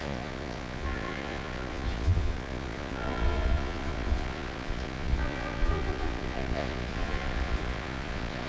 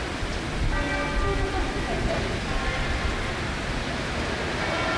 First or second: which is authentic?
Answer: second